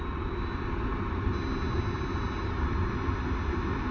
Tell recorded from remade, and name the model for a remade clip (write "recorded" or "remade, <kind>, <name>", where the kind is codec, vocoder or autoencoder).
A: recorded